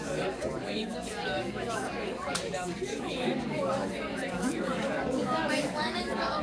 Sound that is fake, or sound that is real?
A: fake